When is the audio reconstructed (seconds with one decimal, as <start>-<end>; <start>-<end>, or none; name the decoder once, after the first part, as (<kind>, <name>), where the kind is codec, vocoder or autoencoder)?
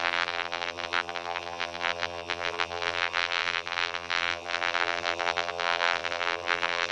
0.0-6.9 (vocoder, BigVGAN v2)